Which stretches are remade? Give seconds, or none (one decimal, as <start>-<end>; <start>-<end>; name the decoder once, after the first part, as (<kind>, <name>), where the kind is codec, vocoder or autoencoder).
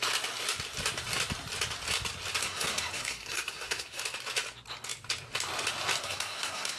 2.4-4.0 (codec, SNAC); 6.0-6.8